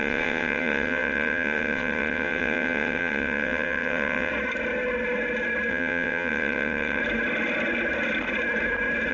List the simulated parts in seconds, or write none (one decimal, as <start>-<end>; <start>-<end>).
0.0-4.3; 5.7-7.0